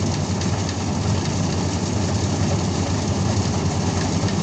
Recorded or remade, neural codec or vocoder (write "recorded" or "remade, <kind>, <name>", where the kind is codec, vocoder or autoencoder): recorded